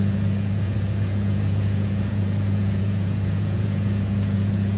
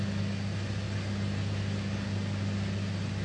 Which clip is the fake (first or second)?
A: first